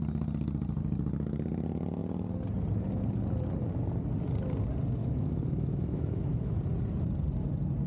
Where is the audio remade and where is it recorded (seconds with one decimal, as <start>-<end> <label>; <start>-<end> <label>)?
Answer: 0.0-5.0 recorded; 5.0-6.6 remade; 6.6-7.9 recorded